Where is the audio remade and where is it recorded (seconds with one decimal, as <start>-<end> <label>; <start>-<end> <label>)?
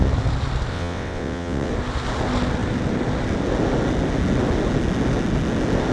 0.0-0.7 recorded; 0.7-1.7 remade; 1.7-5.9 recorded